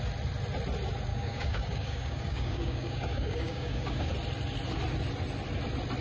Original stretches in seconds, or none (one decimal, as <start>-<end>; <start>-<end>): 0.0-1.1; 4.1-6.0